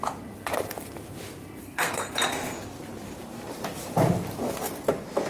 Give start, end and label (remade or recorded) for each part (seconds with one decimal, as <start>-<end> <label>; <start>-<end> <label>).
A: 0.0-1.6 recorded; 1.6-2.1 remade; 2.1-5.3 recorded